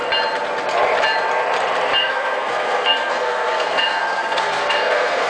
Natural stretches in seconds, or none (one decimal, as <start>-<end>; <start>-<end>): 0.0-2.0